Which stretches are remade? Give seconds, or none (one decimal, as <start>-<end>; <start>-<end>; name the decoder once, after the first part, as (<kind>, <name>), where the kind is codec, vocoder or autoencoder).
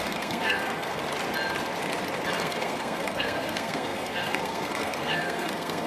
0.0-1.0 (codec, SNAC); 2.3-5.9